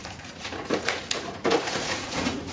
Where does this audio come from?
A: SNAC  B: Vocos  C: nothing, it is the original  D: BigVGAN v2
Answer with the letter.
B